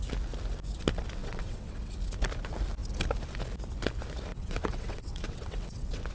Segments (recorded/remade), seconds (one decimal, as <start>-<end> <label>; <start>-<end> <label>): 0.0-1.2 recorded; 1.2-1.9 remade; 1.9-4.3 recorded; 4.3-6.1 remade